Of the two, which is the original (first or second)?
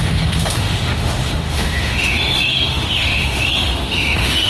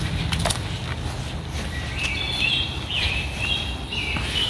second